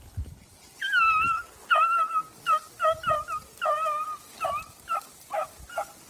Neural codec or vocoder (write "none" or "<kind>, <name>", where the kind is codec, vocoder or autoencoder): none